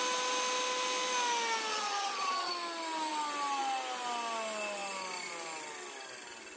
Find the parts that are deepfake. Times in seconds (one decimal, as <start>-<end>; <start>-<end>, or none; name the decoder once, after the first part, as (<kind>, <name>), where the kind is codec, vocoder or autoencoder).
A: 1.7-2.5 (vocoder, HiFi-GAN)